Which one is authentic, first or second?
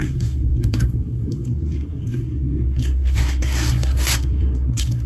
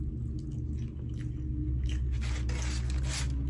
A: second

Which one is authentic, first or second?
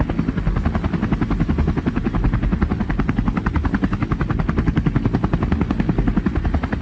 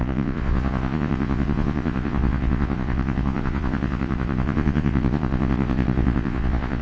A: first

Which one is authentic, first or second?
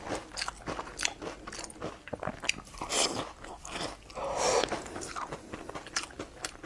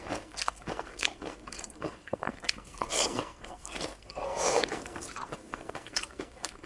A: first